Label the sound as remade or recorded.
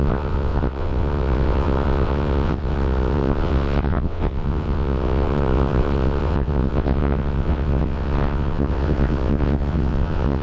remade